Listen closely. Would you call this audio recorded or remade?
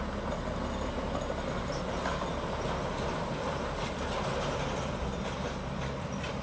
recorded